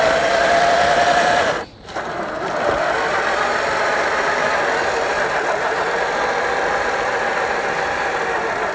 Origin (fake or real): fake